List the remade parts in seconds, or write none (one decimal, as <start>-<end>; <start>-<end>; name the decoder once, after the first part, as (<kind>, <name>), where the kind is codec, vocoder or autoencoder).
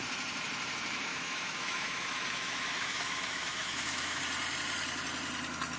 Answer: 1.1-4.2 (autoencoder, DAC-VAE)